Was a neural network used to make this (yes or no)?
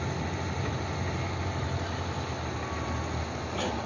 no